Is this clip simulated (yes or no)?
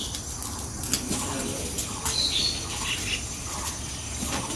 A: no